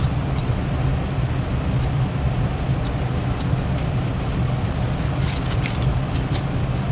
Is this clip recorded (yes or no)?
yes